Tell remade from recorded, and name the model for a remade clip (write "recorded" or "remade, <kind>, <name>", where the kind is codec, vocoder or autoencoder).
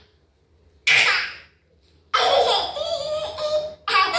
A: recorded